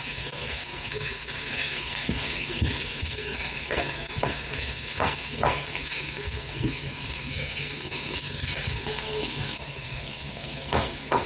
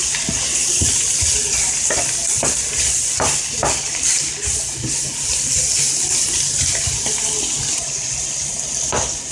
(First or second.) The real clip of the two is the second